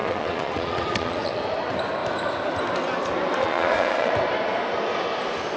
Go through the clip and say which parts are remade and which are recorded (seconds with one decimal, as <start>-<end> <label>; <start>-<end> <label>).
0.0-1.4 remade; 1.4-3.4 recorded; 3.4-4.1 remade; 4.1-5.6 recorded

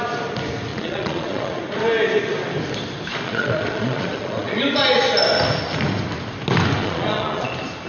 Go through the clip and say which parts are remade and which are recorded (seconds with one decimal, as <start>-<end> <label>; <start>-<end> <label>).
0.0-0.7 recorded; 0.7-1.6 remade; 1.6-3.1 recorded; 3.1-4.6 remade; 4.6-6.8 recorded; 6.8-7.5 remade; 7.5-7.9 recorded